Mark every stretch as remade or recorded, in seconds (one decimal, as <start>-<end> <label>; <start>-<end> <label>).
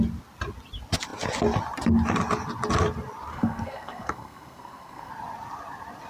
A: 0.0-3.3 recorded; 3.3-5.1 remade; 5.1-6.1 recorded